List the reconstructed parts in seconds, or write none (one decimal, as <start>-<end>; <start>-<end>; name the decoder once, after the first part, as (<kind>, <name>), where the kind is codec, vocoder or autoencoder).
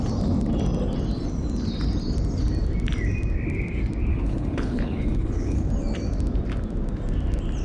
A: 4.1-5.7 (codec, HILCodec)